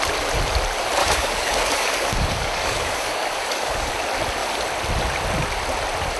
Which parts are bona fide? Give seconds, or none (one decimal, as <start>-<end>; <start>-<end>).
0.0-1.0; 3.9-6.2